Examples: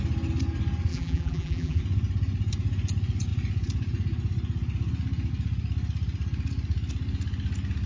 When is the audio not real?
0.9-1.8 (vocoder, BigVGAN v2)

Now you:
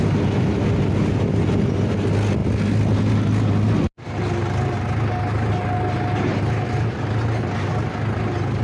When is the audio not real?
none

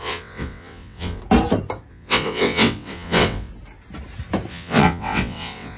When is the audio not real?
0.0-1.2 (vocoder, WaveNeXt); 1.9-3.5; 4.5-5.8

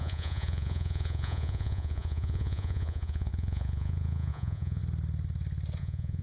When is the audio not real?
0.0-4.8 (vocoder, Vocos); 5.8-6.2

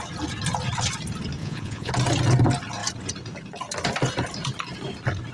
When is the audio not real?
1.4-1.9 (vocoder, Vocos)

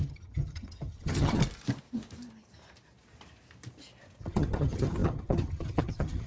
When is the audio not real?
0.0-1.4 (vocoder, HiFi-GAN); 4.2-6.3

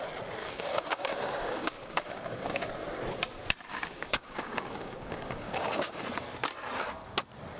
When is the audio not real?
0.4-2.7 (codec, DAC); 3.7-6.0